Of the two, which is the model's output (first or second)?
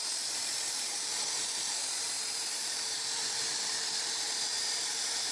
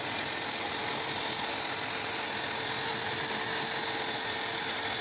first